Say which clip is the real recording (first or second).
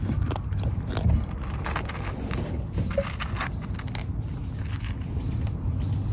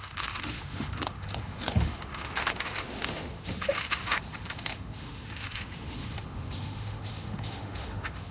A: first